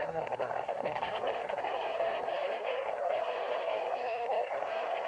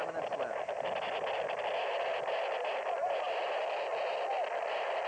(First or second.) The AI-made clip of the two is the first